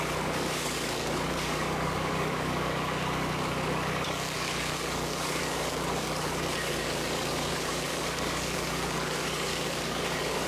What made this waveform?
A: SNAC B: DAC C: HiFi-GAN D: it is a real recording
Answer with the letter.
B